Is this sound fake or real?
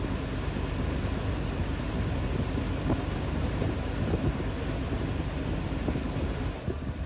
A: real